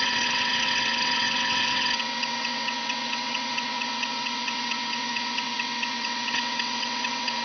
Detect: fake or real fake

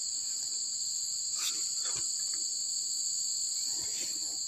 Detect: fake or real real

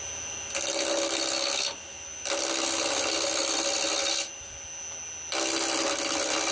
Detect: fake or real real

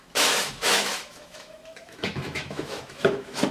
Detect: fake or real fake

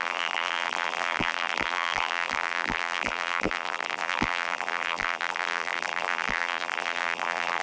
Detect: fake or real fake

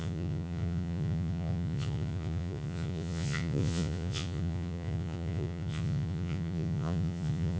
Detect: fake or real fake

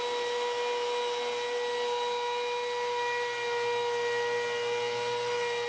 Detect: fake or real real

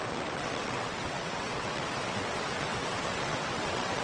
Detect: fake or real fake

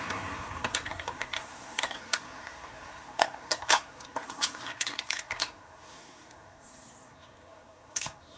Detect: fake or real fake